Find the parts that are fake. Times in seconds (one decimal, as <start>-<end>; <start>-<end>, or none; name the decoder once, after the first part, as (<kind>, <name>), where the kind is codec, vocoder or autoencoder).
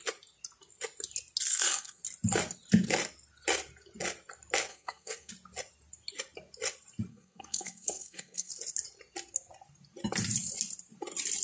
1.5-2.0 (codec, SNAC); 4.7-5.3; 7.1-8.5